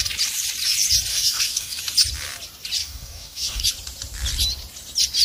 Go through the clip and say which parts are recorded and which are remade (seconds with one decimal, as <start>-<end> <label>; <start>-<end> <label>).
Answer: 0.0-1.1 recorded; 1.1-1.8 remade; 1.8-2.8 recorded; 2.8-3.6 remade; 3.6-5.2 recorded